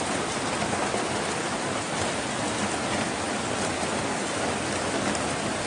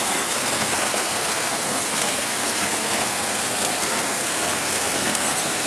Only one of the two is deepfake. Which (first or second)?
second